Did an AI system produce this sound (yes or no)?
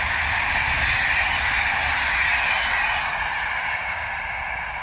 no